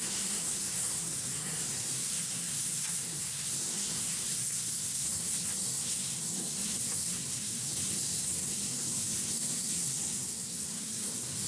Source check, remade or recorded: remade